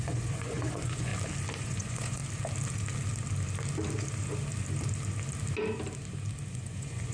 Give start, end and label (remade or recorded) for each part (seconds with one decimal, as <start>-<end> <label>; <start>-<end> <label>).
0.0-1.1 remade; 1.1-1.6 recorded; 1.6-2.2 remade; 2.2-6.5 recorded; 6.5-7.1 remade